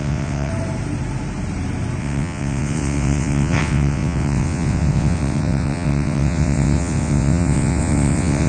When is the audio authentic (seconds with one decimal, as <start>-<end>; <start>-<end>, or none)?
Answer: 0.5-2.0